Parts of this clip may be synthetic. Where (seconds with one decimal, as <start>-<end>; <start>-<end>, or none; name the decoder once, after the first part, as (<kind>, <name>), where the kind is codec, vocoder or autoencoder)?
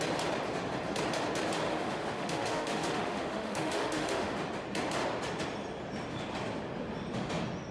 1.7-4.3 (autoencoder, DAC-VAE)